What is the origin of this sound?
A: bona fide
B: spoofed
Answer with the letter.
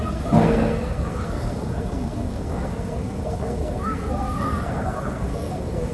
B